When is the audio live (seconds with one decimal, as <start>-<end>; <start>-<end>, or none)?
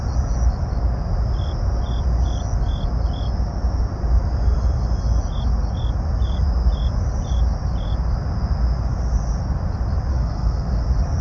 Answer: 0.0-10.1; 10.7-11.2